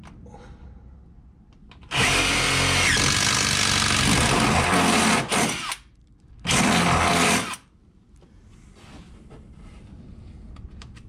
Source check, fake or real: real